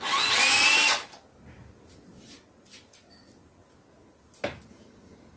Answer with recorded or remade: recorded